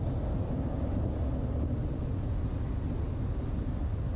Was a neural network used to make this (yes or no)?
no